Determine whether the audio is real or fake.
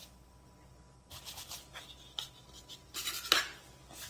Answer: real